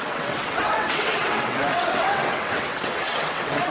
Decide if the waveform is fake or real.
fake